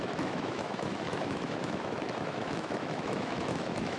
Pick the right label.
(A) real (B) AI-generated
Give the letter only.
B